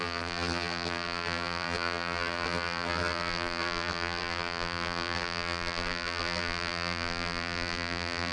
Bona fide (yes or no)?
no